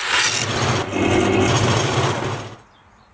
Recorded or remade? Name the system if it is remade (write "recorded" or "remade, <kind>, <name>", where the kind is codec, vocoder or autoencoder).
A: recorded